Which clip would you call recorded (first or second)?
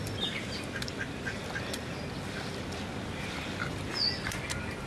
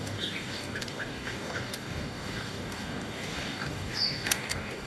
first